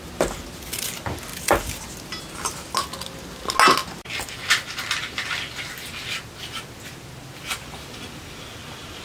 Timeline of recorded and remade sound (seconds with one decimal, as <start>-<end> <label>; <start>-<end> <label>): 0.0-9.0 recorded